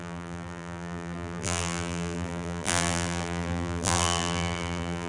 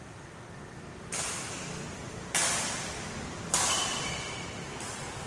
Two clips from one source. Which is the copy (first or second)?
first